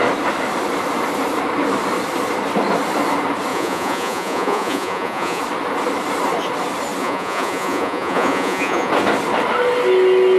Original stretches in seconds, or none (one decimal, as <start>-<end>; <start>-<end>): 0.0-3.5; 5.4-7.0; 8.9-10.4